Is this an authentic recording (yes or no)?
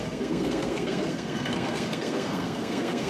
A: no